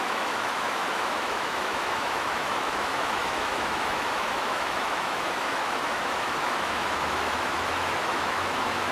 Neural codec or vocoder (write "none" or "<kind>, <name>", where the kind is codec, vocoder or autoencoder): autoencoder, DAC-VAE